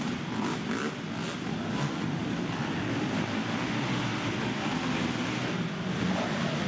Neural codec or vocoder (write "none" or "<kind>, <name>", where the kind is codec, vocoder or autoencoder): none